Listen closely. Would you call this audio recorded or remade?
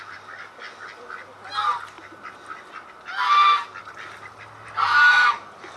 recorded